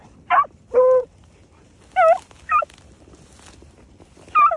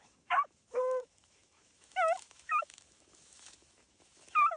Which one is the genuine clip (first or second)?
first